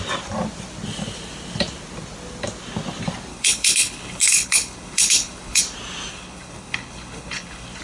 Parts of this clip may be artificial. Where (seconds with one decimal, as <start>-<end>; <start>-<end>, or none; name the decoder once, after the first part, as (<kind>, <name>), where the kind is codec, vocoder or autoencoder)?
3.3-5.6 (codec, HILCodec); 6.1-7.8